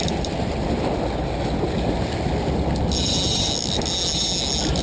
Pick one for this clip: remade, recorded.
recorded